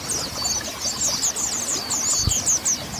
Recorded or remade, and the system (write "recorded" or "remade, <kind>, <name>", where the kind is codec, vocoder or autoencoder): recorded